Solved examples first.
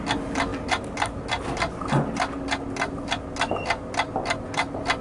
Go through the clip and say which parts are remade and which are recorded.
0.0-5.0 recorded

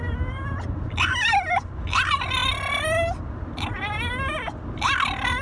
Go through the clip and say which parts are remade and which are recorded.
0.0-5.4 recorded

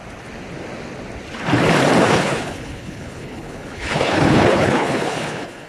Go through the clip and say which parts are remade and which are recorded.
0.0-2.1 recorded; 2.1-5.7 remade

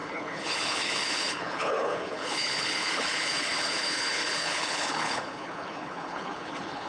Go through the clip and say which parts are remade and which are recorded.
0.0-6.9 remade

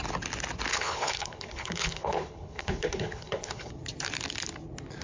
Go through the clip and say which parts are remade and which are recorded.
0.0-0.7 recorded; 0.7-3.7 remade; 3.7-5.0 recorded

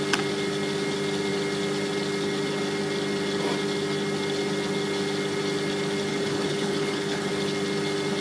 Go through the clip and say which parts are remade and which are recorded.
0.0-6.1 recorded; 6.1-7.3 remade; 7.3-8.2 recorded